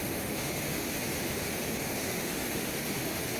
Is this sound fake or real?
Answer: fake